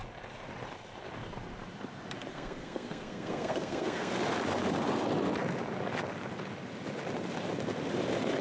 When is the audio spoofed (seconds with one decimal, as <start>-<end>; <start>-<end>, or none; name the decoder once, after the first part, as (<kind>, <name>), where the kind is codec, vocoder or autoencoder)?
2.3-4.1 (codec, SNAC)